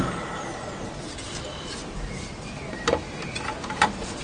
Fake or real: real